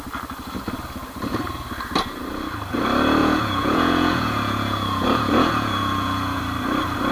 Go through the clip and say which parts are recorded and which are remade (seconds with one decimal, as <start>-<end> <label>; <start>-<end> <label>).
0.0-3.2 recorded; 3.2-6.4 remade; 6.4-7.1 recorded